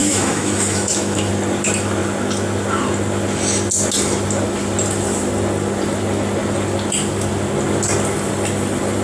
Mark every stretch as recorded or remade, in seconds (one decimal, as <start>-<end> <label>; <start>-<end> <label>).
0.0-1.3 remade; 1.3-9.0 recorded